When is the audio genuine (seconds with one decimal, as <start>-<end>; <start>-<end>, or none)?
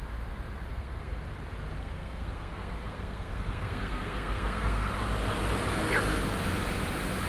0.0-0.7; 1.2-1.8; 4.9-7.3